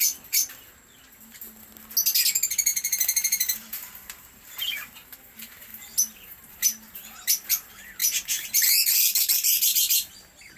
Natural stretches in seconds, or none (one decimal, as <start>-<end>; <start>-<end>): 0.0-2.7; 4.9-8.0; 10.1-10.6